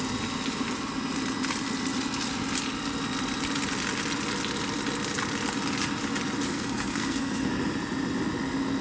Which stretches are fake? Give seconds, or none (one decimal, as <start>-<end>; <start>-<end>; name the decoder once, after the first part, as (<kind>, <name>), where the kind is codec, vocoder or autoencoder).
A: 6.5-7.5 (codec, SNAC)